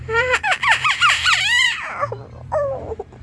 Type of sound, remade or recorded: remade